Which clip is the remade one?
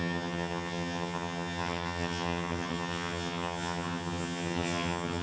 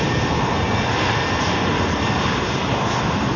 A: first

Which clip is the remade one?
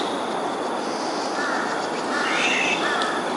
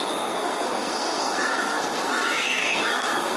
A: second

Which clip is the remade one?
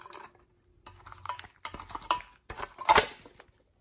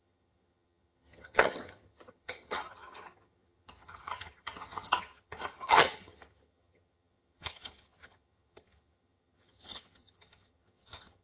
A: second